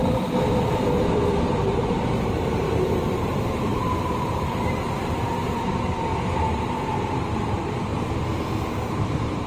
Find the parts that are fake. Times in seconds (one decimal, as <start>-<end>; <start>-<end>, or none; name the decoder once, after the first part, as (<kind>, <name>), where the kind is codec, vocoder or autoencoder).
0.0-6.1 (vocoder, BigVGAN v2); 7.1-7.9